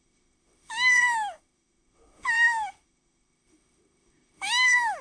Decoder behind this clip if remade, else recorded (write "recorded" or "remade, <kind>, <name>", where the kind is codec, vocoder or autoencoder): remade, autoencoder, DAC-VAE